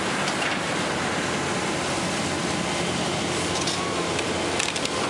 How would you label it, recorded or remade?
recorded